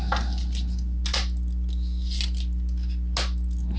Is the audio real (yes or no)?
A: yes